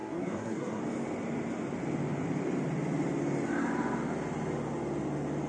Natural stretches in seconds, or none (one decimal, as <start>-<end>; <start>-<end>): 0.8-5.5